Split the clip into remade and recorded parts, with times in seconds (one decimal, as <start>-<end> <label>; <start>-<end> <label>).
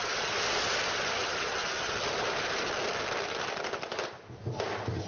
0.0-5.1 recorded